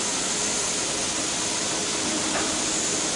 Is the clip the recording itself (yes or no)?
yes